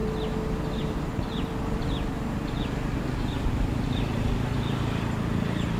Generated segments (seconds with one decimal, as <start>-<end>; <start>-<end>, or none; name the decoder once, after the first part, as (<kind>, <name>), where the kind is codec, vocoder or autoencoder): 3.5-5.8 (vocoder, BigVGAN v2)